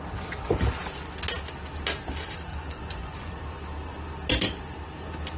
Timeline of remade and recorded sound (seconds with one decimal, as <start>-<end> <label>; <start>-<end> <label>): 0.0-2.5 recorded; 2.5-3.3 remade; 3.3-5.4 recorded